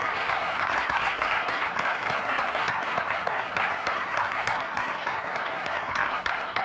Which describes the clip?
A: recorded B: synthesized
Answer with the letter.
B